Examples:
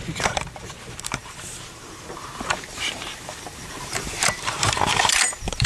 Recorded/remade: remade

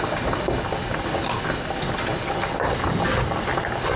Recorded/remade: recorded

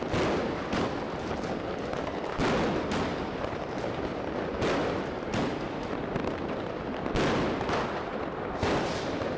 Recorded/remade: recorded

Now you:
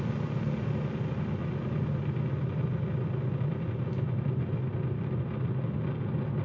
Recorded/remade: recorded